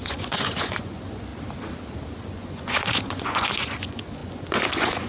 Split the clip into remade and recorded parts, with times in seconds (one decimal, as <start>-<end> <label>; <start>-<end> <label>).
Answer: 0.0-1.3 remade; 1.3-2.3 recorded; 2.3-5.1 remade